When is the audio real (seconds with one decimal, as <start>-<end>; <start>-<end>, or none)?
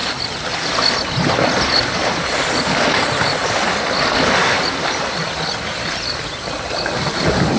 0.0-7.6